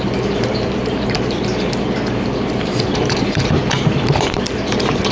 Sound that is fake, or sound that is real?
fake